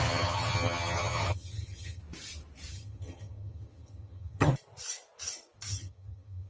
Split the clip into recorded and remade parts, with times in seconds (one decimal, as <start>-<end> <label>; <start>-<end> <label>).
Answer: 0.0-2.0 remade; 2.0-2.7 recorded; 2.7-4.5 remade; 4.5-5.7 recorded; 5.7-6.5 remade